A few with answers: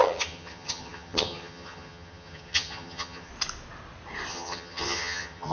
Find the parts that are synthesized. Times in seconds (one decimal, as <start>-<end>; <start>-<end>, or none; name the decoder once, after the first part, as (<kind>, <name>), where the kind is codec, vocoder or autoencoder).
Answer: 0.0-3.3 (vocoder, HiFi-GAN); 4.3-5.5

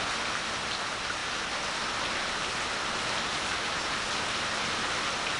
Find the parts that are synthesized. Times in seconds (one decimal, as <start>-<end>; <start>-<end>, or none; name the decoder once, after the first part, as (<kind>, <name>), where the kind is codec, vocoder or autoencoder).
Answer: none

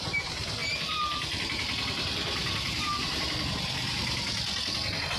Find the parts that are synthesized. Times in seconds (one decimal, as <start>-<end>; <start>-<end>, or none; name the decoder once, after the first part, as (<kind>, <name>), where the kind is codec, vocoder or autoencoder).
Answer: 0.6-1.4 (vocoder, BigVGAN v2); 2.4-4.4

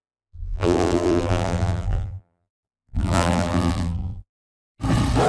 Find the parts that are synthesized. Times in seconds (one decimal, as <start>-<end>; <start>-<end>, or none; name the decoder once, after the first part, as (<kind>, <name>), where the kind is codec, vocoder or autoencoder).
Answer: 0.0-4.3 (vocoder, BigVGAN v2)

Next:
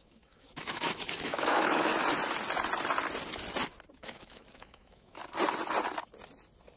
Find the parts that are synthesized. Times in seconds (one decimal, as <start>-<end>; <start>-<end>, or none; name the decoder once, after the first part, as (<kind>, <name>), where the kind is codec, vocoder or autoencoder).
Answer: 0.0-1.9 (autoencoder, DAC-VAE); 4.0-5.2

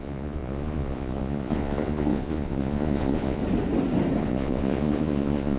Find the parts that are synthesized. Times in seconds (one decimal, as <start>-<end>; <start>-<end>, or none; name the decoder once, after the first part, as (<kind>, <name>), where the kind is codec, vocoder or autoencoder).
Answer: 0.0-3.4 (vocoder, Vocos); 4.2-5.6

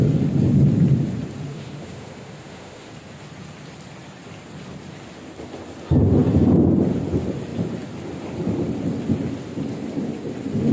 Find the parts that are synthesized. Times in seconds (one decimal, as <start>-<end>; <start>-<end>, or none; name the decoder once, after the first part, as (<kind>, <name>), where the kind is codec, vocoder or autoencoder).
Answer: 1.5-2.9 (autoencoder, DAC-VAE)